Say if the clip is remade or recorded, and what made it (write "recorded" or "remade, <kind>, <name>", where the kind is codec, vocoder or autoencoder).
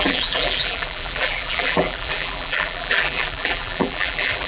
remade, vocoder, BigVGAN v2